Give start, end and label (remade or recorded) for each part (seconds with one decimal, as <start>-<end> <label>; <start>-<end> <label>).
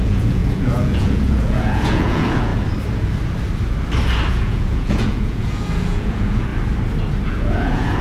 0.0-2.5 remade; 2.5-4.3 recorded; 4.3-6.5 remade; 6.5-7.3 recorded; 7.3-8.0 remade